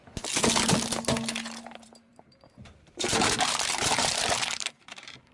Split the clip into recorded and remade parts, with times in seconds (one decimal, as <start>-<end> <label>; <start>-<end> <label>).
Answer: 0.0-1.6 recorded; 1.6-5.3 remade

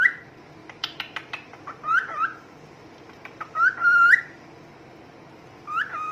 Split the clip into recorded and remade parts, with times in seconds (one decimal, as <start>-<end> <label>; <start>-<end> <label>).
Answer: 0.0-0.6 recorded; 0.6-4.2 remade; 4.2-6.1 recorded

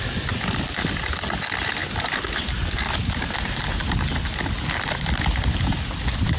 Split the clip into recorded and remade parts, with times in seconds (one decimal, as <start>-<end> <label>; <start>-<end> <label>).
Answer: 0.0-6.4 recorded

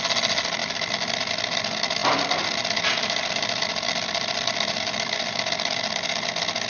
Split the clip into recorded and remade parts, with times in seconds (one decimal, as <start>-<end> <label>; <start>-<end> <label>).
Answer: 0.0-0.6 recorded; 0.6-1.3 remade; 1.3-2.0 recorded; 2.0-5.7 remade; 5.7-6.7 recorded

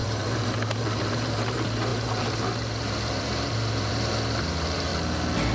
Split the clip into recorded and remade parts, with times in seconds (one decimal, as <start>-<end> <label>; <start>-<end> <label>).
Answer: 0.0-4.9 remade; 4.9-5.5 recorded